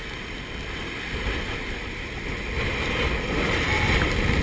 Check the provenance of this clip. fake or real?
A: real